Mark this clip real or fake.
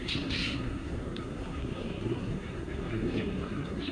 fake